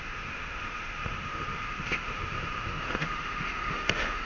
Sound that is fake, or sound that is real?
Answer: fake